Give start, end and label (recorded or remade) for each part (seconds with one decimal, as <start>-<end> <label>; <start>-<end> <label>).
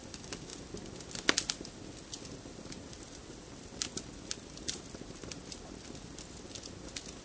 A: 0.0-7.2 recorded